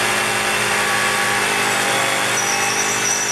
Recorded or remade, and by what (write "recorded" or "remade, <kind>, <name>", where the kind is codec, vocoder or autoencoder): recorded